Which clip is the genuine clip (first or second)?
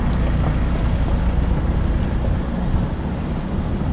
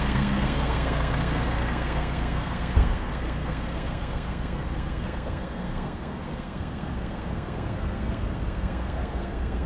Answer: first